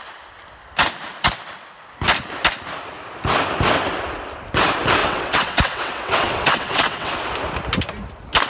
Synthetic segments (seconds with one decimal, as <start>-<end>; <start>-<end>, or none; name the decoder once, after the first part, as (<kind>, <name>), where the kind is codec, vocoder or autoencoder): 5.0-7.1 (vocoder, WaveNeXt)